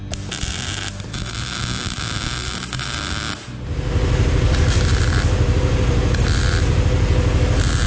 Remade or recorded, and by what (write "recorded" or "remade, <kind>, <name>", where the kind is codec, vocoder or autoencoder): recorded